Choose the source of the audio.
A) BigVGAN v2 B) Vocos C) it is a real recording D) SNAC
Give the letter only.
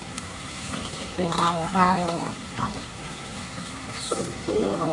D